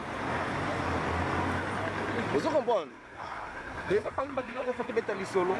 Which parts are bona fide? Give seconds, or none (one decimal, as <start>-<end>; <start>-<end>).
0.0-2.9; 4.9-5.6